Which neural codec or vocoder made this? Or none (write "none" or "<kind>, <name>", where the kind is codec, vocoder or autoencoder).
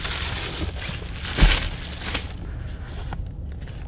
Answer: none